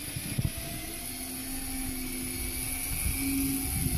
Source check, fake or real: real